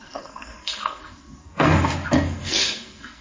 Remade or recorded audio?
remade